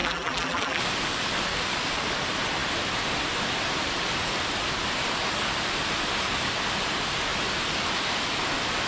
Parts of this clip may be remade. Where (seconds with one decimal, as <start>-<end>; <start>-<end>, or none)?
0.0-0.8